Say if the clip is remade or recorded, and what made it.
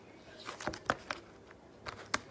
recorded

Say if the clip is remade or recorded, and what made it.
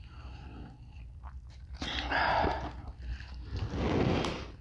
recorded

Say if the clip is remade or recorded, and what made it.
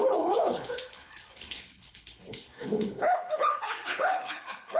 remade, codec, HILCodec